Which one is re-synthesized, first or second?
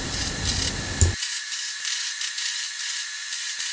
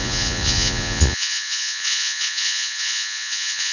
second